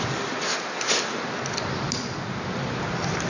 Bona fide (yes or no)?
yes